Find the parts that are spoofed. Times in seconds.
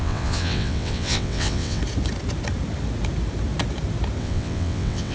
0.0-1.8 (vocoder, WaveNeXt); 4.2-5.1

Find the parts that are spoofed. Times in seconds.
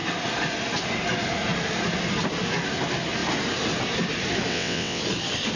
4.5-5.0 (vocoder, WaveNeXt)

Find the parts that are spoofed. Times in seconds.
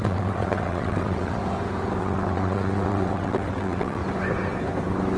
0.0-1.4 (vocoder, WaveNeXt); 2.0-4.0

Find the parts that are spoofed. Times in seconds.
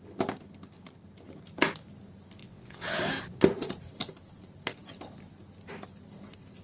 2.4-3.0 (vocoder, WaveNeXt)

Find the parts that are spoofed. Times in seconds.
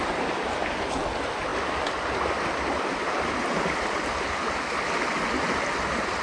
none